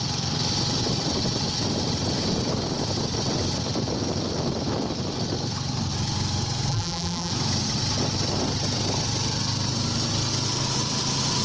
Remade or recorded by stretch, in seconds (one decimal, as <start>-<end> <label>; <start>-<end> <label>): 0.0-6.7 recorded; 6.7-7.3 remade; 7.3-11.4 recorded